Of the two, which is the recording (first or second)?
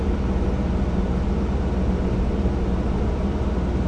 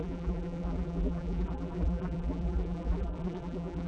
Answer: first